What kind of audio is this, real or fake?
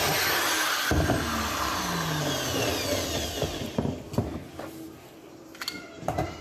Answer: real